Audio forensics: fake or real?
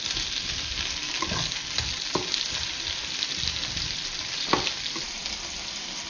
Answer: real